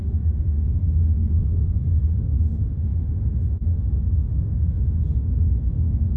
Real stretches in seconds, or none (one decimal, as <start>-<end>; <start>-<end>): none

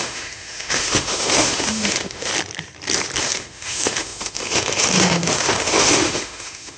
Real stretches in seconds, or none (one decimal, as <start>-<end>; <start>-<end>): 2.3-3.2

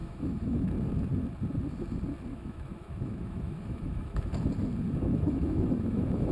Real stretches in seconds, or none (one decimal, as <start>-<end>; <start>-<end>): 0.7-2.3; 4.3-5.1

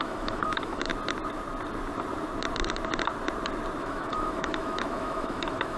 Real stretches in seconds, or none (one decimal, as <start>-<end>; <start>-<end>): 0.9-3.8